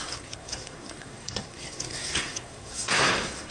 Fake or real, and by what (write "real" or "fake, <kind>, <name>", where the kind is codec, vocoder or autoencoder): fake, codec, SNAC